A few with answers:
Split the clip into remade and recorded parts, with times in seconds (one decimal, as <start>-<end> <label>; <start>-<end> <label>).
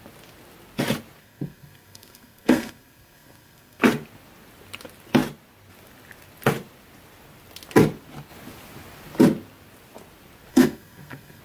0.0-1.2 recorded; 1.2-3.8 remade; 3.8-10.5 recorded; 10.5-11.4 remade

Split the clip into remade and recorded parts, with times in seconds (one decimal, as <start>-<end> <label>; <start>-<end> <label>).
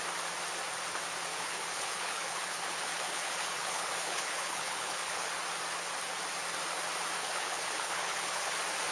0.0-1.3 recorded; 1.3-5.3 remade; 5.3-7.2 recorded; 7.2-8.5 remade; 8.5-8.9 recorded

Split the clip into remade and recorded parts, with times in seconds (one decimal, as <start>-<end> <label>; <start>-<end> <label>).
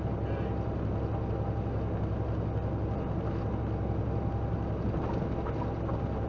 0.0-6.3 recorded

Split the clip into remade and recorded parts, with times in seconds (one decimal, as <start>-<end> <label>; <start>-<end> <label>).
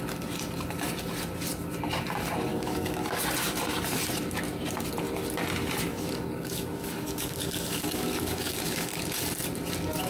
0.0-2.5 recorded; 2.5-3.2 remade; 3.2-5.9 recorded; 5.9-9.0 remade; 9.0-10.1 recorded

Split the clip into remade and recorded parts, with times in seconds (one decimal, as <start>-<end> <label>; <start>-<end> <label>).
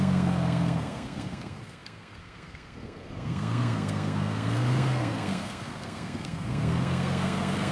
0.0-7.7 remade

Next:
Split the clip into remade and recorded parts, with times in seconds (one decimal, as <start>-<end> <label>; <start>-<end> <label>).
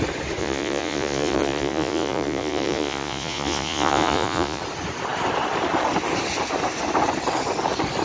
0.0-0.4 recorded; 0.4-4.6 remade; 4.6-8.0 recorded